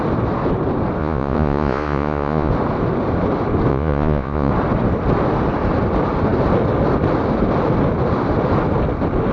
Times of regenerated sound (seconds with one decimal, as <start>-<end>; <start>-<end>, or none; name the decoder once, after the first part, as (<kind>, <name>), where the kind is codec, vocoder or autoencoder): 1.0-2.5 (vocoder, Vocos); 3.7-4.5